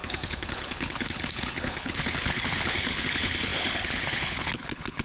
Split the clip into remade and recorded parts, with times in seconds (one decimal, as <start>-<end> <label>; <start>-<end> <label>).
0.0-5.0 remade

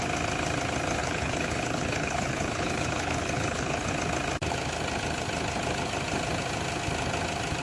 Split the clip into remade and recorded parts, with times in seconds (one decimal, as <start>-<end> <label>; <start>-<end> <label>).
0.0-1.0 recorded; 1.0-3.9 remade; 3.9-7.6 recorded

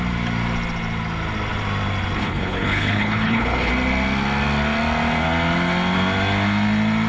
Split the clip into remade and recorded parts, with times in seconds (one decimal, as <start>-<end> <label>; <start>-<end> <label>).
0.0-2.2 recorded; 2.2-3.7 remade; 3.7-7.1 recorded

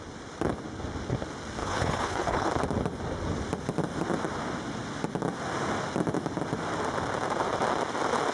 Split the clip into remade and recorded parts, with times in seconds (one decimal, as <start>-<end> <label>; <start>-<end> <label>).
0.0-1.6 recorded; 1.6-2.5 remade; 2.5-8.3 recorded

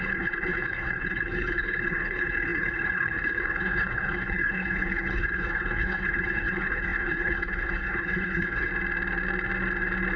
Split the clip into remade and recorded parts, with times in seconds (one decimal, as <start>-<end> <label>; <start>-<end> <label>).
0.0-8.7 remade; 8.7-10.2 recorded

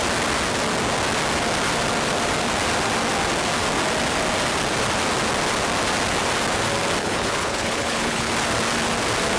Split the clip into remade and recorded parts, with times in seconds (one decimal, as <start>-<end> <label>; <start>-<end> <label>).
0.0-7.0 recorded; 7.0-8.3 remade; 8.3-9.4 recorded

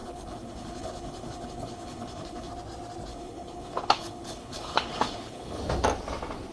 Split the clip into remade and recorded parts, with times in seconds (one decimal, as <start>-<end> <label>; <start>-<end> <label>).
0.0-2.5 remade; 2.5-3.1 recorded; 3.1-5.6 remade; 5.6-6.5 recorded

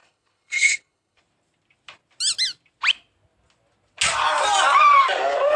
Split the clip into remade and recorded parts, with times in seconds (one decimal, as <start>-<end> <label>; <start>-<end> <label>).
0.0-1.2 remade; 1.2-5.6 recorded